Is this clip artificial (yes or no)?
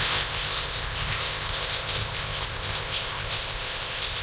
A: yes